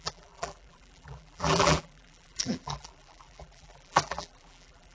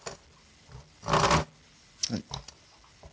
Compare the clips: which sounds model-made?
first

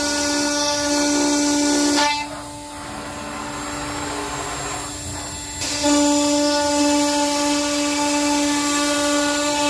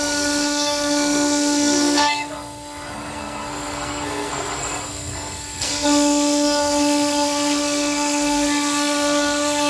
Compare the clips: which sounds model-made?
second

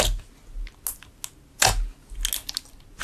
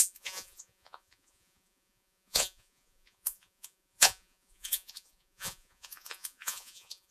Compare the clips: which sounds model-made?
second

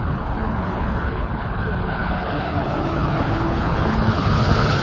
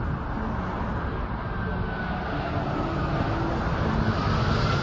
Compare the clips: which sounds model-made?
first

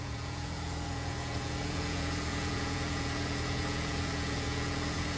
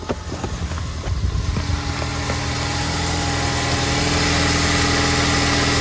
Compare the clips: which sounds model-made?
first